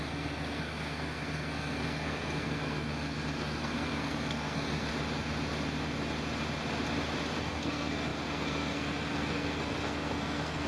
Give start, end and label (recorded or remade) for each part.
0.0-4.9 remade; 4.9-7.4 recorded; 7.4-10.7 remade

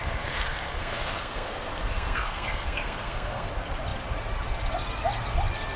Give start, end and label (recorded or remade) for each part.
0.0-3.5 remade; 3.5-5.8 recorded

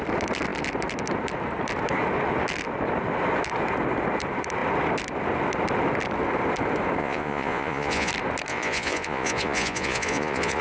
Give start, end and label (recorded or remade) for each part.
0.0-7.0 recorded; 7.0-8.1 remade; 8.1-8.5 recorded; 8.5-10.6 remade

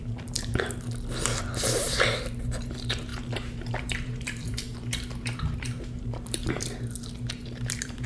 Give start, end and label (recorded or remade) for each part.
0.0-0.5 remade; 0.5-1.6 recorded; 1.6-8.1 remade

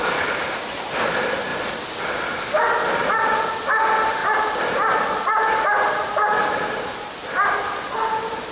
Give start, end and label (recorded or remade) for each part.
0.0-8.5 recorded

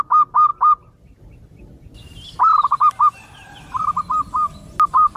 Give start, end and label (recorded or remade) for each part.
0.0-5.2 recorded